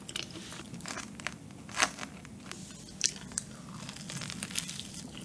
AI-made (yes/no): yes